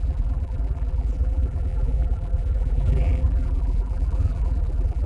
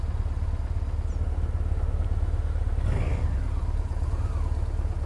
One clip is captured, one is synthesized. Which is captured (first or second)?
second